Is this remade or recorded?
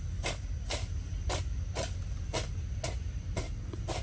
recorded